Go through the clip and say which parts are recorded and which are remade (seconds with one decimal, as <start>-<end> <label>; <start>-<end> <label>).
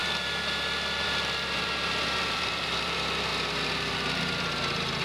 0.0-1.0 recorded; 1.0-3.3 remade; 3.3-3.9 recorded; 3.9-5.0 remade